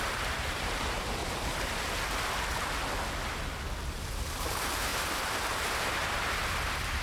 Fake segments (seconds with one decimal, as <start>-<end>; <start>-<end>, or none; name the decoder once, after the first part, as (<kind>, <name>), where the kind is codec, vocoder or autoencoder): 0.0-1.2 (vocoder, BigVGAN v2); 4.0-7.0

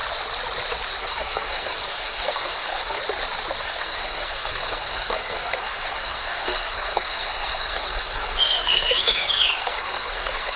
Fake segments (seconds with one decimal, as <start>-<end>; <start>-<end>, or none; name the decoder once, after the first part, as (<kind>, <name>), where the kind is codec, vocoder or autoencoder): 1.0-3.0 (codec, SNAC); 3.6-10.6

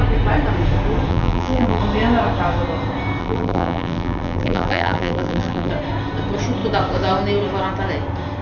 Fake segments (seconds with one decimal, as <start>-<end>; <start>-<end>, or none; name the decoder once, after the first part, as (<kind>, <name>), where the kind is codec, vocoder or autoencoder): 1.1-1.8 (vocoder, BigVGAN v2); 3.2-5.7

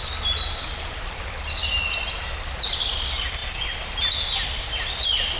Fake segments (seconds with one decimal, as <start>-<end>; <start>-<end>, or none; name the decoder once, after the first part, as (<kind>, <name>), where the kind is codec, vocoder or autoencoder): none